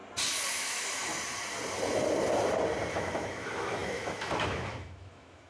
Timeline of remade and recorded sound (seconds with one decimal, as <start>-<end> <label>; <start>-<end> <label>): 0.0-0.5 recorded; 0.5-1.1 remade; 1.1-2.9 recorded; 2.9-5.5 remade